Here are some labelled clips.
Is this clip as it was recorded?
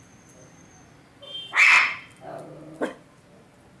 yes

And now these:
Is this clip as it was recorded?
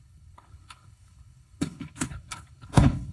no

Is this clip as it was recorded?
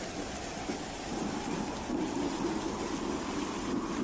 yes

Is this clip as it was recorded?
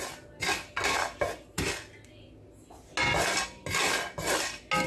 yes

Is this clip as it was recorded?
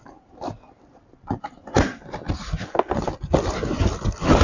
yes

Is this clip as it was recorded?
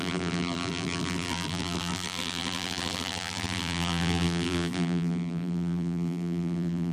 no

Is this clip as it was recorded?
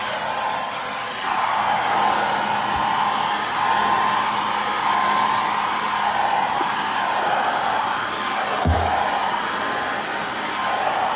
yes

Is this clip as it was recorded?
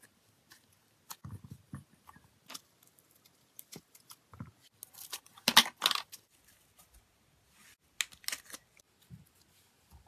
yes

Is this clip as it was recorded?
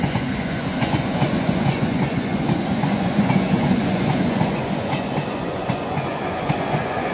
no